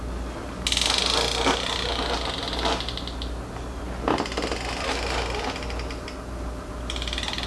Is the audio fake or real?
real